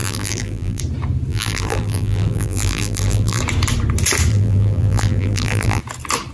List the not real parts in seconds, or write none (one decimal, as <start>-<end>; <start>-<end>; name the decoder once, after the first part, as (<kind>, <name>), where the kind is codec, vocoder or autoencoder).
0.0-0.8 (vocoder, BigVGAN v2); 1.3-3.4; 4.3-5.8